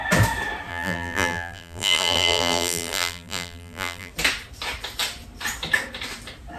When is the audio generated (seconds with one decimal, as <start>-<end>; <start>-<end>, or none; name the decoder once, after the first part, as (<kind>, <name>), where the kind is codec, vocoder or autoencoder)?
0.7-4.1 (vocoder, BigVGAN v2)